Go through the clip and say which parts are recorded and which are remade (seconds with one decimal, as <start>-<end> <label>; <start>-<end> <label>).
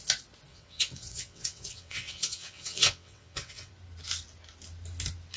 0.0-0.5 recorded; 0.5-3.7 remade; 3.7-5.4 recorded